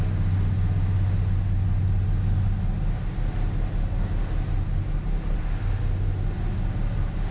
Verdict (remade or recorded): recorded